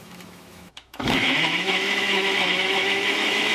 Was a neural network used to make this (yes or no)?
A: yes